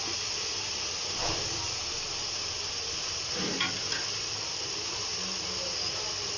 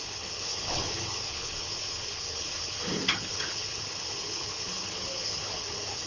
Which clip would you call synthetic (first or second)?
second